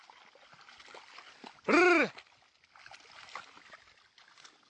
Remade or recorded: recorded